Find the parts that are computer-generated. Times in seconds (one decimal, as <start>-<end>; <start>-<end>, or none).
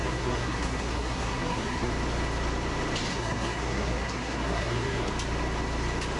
0.0-1.9; 3.1-5.1